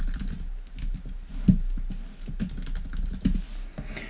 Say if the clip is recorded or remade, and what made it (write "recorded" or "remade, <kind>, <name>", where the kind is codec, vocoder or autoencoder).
recorded